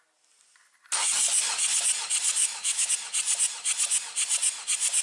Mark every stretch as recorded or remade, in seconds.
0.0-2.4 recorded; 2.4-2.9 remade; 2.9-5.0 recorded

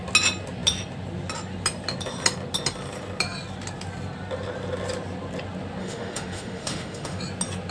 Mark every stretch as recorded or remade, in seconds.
0.0-5.8 recorded; 5.8-7.2 remade; 7.2-7.7 recorded

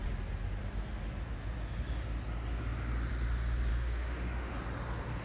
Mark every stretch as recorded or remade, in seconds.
0.0-3.7 recorded; 3.7-4.5 remade; 4.5-5.2 recorded

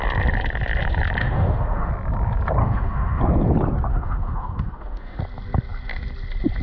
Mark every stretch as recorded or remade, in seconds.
0.0-1.2 recorded; 1.2-1.9 remade; 1.9-2.6 recorded; 2.6-3.2 remade; 3.2-3.9 recorded; 3.9-5.2 remade; 5.2-6.6 recorded

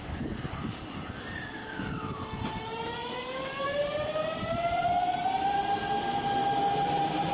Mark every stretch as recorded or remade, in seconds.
0.0-7.3 recorded